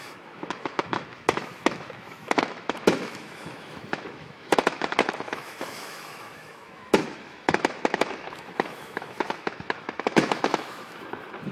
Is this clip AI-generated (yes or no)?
yes